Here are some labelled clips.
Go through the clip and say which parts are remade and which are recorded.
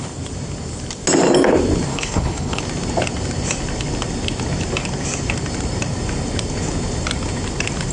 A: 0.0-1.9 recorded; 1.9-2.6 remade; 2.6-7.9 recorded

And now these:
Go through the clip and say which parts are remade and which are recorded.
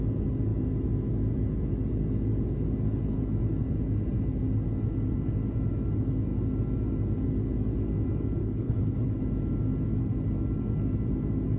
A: 0.0-8.4 recorded; 8.4-9.2 remade; 9.2-11.6 recorded